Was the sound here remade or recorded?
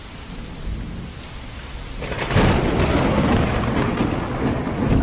recorded